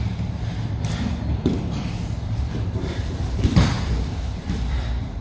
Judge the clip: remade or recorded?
remade